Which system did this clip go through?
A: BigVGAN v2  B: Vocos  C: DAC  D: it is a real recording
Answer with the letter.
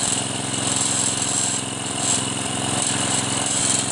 A